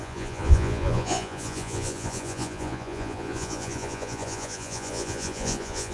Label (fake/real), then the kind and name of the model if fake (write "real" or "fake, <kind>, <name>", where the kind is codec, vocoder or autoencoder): fake, vocoder, Vocos